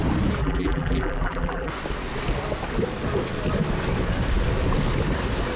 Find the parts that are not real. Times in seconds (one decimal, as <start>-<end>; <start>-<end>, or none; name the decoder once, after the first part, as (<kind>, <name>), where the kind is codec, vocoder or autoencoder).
0.4-1.7 (vocoder, BigVGAN v2)